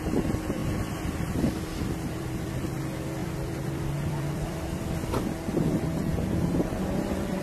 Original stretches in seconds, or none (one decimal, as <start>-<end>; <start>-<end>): 0.0-0.6; 2.8-3.2